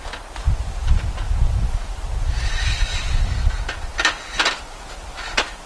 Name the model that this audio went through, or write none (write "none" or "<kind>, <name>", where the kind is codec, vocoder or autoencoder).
none